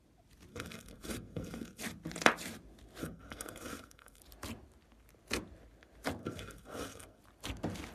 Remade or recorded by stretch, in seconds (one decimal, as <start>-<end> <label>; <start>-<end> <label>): 0.0-0.5 recorded; 0.5-1.8 remade; 1.8-3.0 recorded; 3.0-4.2 remade; 4.2-6.2 recorded; 6.2-7.2 remade; 7.2-7.9 recorded